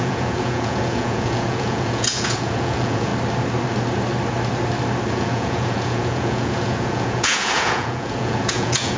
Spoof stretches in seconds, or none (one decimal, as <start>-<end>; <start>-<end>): 0.0-3.1; 5.1-9.0